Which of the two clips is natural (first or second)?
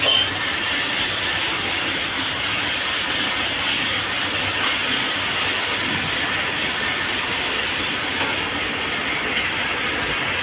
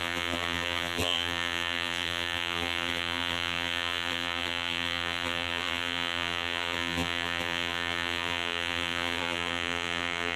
first